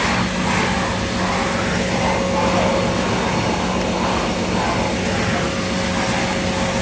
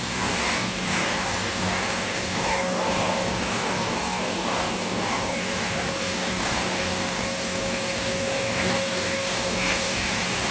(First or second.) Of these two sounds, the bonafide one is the first